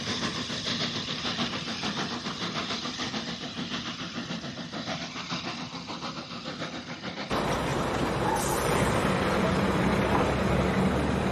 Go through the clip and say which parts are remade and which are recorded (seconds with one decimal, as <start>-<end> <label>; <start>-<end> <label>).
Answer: 0.0-7.7 recorded; 7.7-9.7 remade; 9.7-11.3 recorded